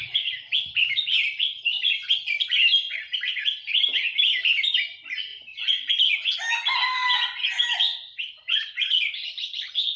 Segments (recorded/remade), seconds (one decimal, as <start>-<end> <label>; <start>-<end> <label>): 0.0-10.0 recorded